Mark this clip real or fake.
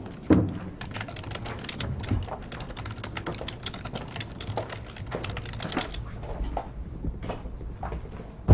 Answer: real